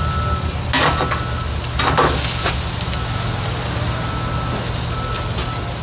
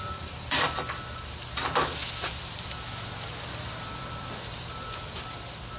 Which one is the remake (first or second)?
second